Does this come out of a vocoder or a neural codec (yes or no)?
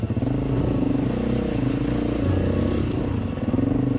no